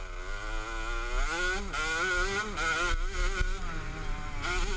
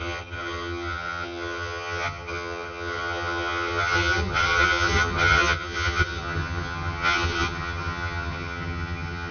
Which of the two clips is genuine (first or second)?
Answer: first